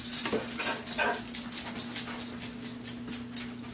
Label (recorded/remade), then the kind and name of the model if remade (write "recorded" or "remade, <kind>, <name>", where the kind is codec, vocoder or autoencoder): recorded